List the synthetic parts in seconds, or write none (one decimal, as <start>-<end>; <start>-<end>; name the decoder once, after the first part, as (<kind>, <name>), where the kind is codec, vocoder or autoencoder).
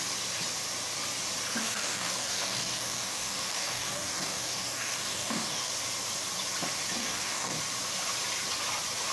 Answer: 1.6-5.7 (codec, DAC); 7.0-7.6